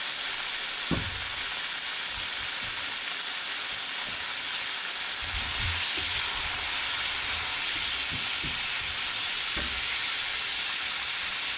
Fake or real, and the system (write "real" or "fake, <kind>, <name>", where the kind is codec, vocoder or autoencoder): real